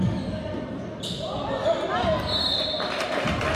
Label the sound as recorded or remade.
recorded